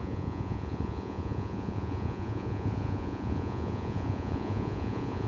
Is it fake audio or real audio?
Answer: fake